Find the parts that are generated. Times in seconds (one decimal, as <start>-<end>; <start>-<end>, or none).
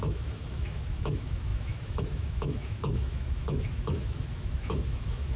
0.0-5.4